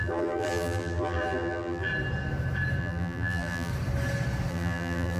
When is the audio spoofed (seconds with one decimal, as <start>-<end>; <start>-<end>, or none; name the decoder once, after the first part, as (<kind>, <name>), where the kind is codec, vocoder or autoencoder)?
0.0-1.9 (vocoder, BigVGAN v2); 2.8-3.7; 4.5-5.2